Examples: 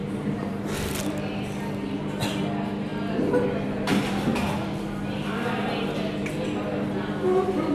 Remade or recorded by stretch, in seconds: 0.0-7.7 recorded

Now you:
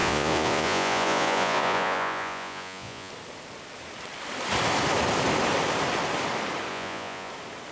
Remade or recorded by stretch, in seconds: 0.0-3.1 remade; 3.1-6.7 recorded; 6.7-7.3 remade; 7.3-7.7 recorded

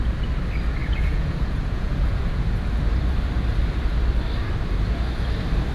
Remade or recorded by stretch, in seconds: 0.0-0.8 recorded; 0.8-2.2 remade; 2.2-5.7 recorded

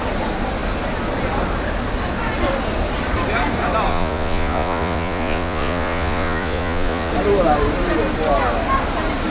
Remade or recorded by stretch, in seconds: 0.0-3.9 recorded; 3.9-7.1 remade; 7.1-9.3 recorded

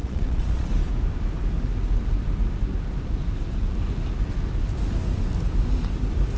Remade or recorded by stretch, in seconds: 0.0-0.7 remade; 0.7-6.4 recorded